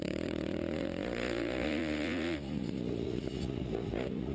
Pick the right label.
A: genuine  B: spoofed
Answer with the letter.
B